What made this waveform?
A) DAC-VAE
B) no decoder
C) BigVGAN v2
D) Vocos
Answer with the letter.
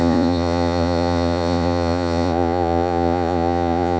D